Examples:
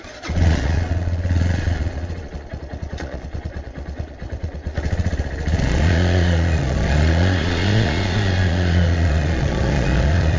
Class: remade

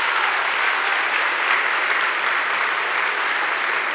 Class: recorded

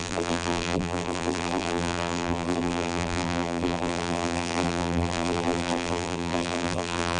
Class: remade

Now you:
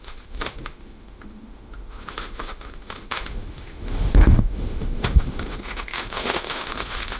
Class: remade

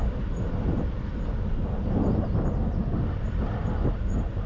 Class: recorded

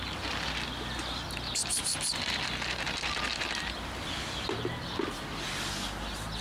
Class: recorded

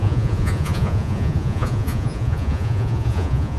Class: remade